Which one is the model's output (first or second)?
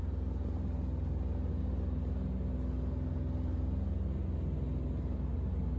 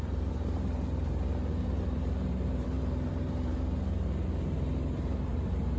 second